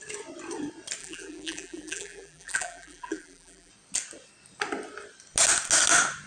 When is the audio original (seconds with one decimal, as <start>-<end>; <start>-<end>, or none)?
0.0-1.0; 3.7-6.3